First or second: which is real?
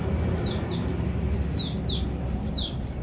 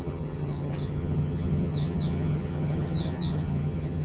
first